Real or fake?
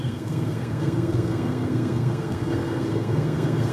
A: fake